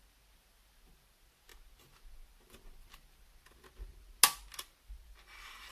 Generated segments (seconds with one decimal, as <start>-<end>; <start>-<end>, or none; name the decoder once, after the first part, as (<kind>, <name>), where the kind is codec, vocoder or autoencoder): none